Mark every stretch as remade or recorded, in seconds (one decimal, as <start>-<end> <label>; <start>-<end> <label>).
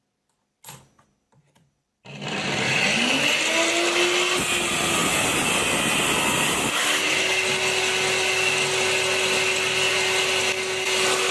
0.0-11.3 recorded